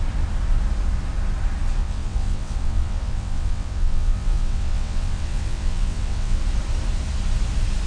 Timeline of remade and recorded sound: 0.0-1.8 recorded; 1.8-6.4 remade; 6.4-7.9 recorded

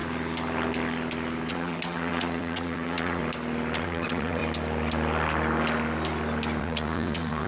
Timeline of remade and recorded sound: 0.0-1.5 recorded; 1.5-3.2 remade; 3.2-3.8 recorded; 3.8-4.4 remade; 4.4-6.6 recorded; 6.6-7.5 remade

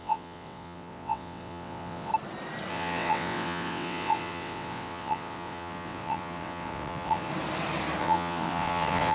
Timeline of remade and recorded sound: 0.0-2.1 remade; 2.1-2.7 recorded; 2.7-7.3 remade; 7.3-8.0 recorded; 8.0-9.1 remade

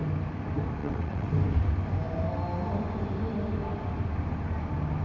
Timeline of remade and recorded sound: 0.0-0.8 recorded; 0.8-1.3 remade; 1.3-5.0 recorded

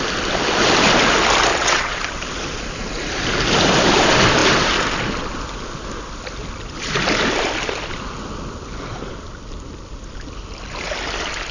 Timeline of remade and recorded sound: 0.0-1.5 recorded; 1.5-2.0 remade; 2.0-11.5 recorded

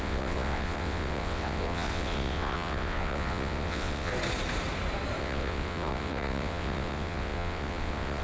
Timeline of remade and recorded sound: 0.0-4.1 remade; 4.1-5.2 recorded; 5.2-8.2 remade